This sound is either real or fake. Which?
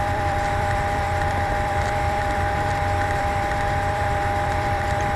fake